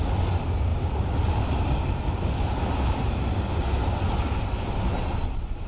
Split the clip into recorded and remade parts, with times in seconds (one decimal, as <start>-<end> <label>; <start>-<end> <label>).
0.0-5.7 recorded